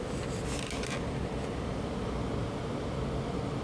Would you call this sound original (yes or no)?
yes